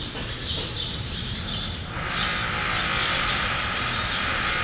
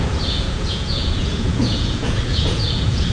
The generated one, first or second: second